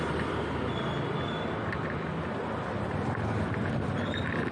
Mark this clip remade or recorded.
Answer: recorded